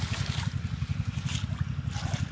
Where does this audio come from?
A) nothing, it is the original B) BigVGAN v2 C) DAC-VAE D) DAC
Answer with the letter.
A